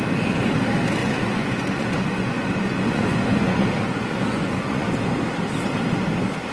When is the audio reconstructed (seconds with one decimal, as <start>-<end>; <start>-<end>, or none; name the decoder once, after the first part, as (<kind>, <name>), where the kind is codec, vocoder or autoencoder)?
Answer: 1.0-4.9 (vocoder, Vocos)